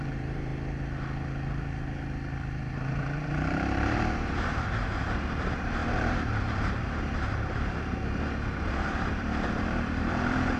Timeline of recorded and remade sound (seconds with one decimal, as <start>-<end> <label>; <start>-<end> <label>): 0.0-0.5 remade; 0.5-2.6 recorded; 2.6-10.6 remade